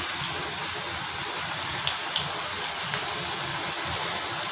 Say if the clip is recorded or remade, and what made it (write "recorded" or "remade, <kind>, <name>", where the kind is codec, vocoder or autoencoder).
recorded